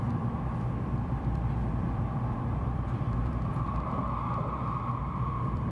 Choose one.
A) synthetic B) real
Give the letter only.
A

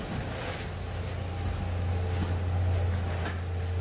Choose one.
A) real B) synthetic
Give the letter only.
A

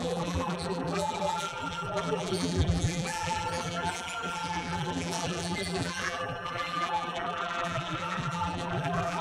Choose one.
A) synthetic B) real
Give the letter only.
A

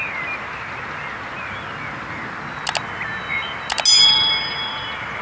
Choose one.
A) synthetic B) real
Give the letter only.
B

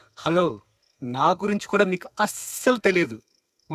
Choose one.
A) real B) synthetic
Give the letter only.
B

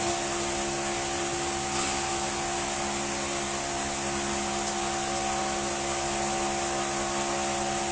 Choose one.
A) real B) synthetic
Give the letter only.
A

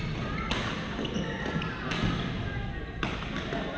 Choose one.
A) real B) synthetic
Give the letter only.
A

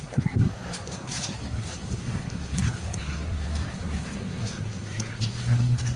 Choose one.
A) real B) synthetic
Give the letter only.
B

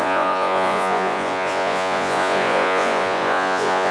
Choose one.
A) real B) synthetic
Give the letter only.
B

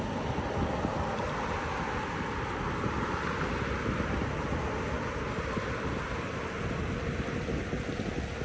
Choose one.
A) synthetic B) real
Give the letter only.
B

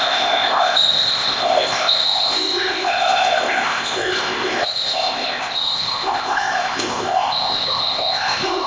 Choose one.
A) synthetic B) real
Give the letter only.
A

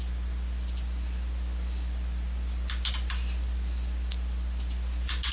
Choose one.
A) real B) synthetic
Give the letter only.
A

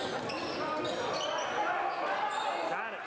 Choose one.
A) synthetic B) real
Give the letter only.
B